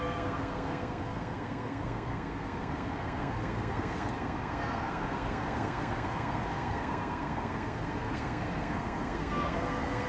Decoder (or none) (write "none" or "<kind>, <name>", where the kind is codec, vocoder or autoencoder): codec, SNAC